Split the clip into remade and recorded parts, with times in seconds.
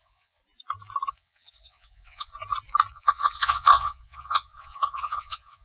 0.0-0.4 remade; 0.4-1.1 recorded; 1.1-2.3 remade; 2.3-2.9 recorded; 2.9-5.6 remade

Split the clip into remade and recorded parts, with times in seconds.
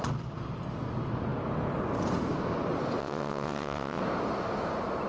0.0-3.0 recorded; 3.0-4.0 remade; 4.0-5.1 recorded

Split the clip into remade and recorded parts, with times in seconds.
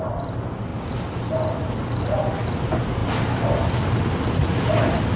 0.0-5.2 recorded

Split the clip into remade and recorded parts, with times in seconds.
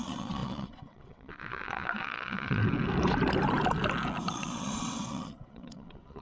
0.0-2.6 remade; 2.6-4.3 recorded; 4.3-6.2 remade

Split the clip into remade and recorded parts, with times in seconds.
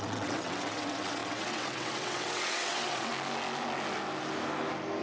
0.0-3.1 remade; 3.1-5.0 recorded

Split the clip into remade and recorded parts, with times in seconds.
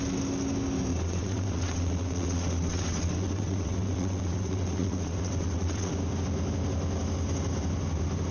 0.0-0.9 recorded; 0.9-5.9 remade; 5.9-8.3 recorded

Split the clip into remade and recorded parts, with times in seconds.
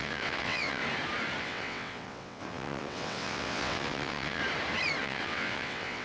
0.0-0.8 remade; 0.8-1.4 recorded; 1.4-4.4 remade; 4.4-5.0 recorded; 5.0-6.0 remade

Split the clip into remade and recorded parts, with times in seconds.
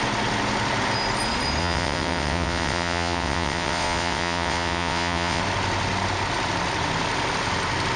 0.0-1.6 recorded; 1.6-5.4 remade; 5.4-8.0 recorded